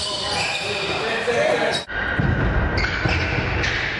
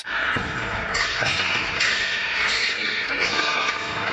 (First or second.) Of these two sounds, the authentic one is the first